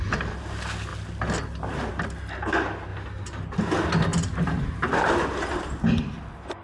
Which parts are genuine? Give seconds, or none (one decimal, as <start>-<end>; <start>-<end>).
0.0-2.9; 3.6-4.1; 5.1-6.6